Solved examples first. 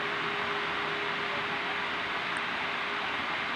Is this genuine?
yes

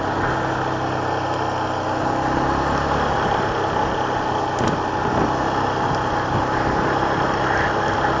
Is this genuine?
yes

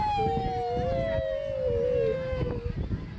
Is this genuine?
yes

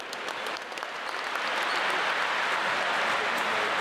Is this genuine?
yes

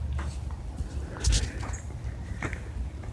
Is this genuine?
yes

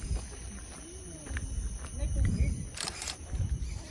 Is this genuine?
no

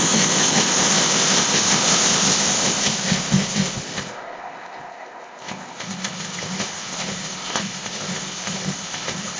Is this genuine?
no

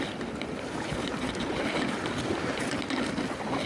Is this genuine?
yes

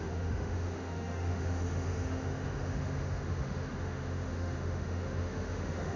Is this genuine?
no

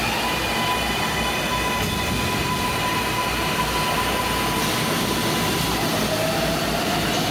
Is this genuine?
yes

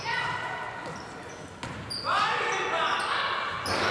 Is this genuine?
yes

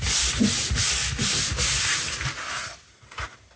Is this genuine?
yes